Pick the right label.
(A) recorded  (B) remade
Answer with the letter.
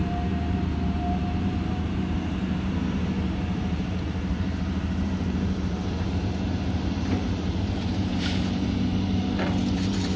B